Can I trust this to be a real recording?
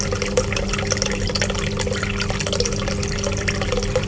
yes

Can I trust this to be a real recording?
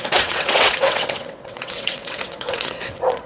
no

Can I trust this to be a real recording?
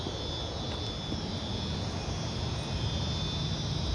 yes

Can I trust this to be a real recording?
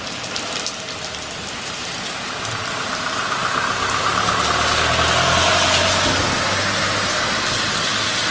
yes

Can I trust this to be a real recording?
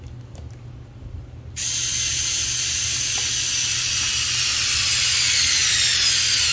yes